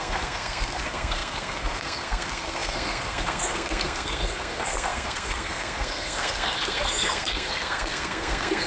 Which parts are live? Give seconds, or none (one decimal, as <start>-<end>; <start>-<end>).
none